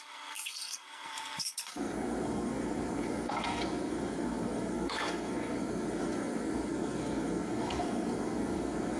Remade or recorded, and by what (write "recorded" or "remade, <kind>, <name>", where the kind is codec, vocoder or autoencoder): remade, codec, SNAC